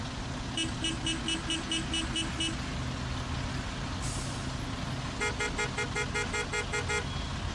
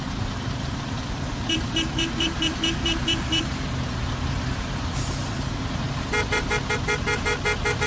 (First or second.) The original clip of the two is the first